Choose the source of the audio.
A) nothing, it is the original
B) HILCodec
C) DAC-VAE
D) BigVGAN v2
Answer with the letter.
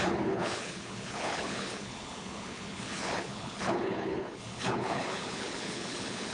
B